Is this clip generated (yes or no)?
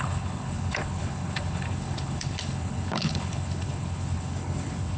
yes